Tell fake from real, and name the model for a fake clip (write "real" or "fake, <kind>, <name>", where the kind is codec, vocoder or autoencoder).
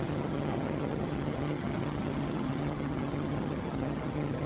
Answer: fake, vocoder, HiFi-GAN